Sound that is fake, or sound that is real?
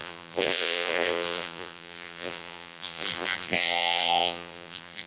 fake